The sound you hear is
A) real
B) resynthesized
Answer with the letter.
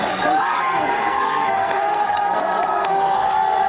B